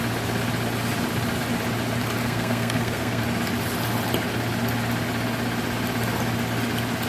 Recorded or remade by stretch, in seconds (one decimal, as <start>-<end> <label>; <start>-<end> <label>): 0.0-2.2 recorded; 2.2-3.2 remade; 3.2-7.1 recorded